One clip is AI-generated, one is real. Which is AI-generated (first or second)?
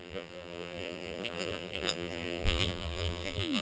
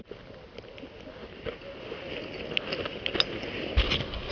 first